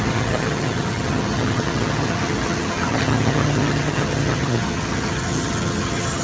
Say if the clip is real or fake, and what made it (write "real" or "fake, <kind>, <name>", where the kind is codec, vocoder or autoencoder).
fake, vocoder, HiFi-GAN